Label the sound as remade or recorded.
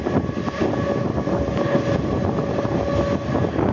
recorded